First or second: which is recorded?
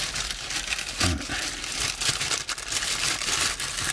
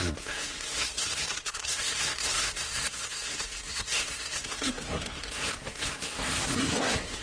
first